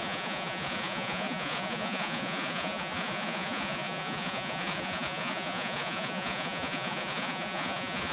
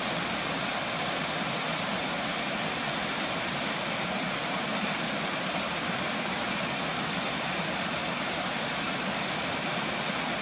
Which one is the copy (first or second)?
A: first